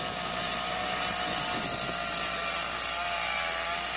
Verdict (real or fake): real